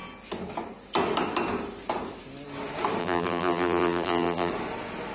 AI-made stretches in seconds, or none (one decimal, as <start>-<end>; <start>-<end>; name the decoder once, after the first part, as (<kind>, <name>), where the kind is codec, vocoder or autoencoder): 3.0-4.5 (vocoder, BigVGAN v2)